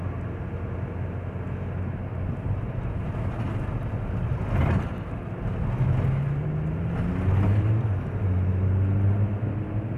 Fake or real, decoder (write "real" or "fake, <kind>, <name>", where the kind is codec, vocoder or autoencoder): real